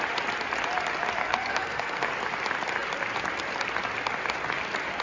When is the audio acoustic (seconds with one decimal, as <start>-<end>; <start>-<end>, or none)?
0.0-1.2; 2.1-5.0